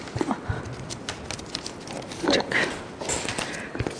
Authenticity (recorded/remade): recorded